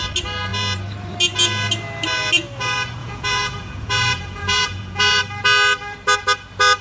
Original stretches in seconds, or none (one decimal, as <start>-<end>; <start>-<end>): 0.0-3.0; 5.2-6.8

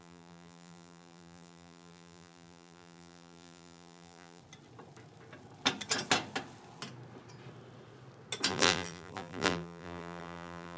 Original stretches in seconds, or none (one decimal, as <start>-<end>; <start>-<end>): 4.4-8.5